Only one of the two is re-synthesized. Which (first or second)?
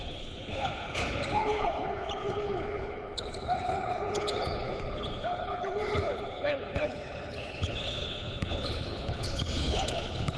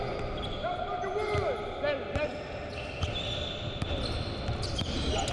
first